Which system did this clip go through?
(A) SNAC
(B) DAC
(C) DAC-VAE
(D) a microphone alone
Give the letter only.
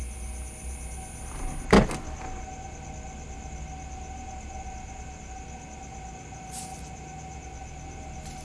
D